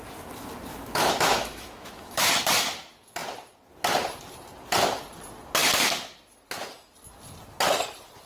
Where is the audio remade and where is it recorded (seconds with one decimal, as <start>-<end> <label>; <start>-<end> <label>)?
0.0-0.7 recorded; 0.7-2.3 remade; 2.3-8.3 recorded